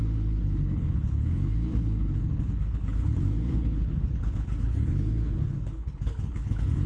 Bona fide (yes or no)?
no